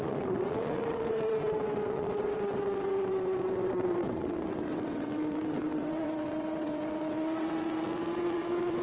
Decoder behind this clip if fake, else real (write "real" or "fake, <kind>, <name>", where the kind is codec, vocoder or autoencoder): fake, vocoder, WaveNeXt